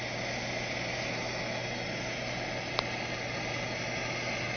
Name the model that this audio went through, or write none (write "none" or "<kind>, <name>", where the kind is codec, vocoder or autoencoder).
none